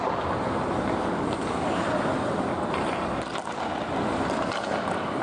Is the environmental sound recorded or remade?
recorded